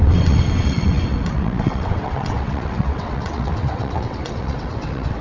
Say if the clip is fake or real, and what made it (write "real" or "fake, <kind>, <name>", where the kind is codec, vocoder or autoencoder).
fake, vocoder, WaveNeXt